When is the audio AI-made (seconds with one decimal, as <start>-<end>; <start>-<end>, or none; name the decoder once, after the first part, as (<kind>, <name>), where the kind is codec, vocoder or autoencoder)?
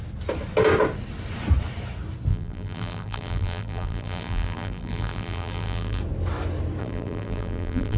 2.3-6.0 (vocoder, BigVGAN v2); 6.8-8.0